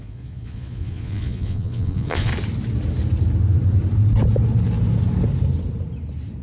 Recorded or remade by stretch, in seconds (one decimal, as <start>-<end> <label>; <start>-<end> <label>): 0.0-2.3 remade; 2.3-6.4 recorded